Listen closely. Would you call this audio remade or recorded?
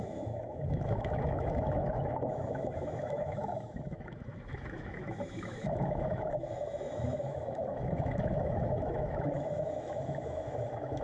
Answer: remade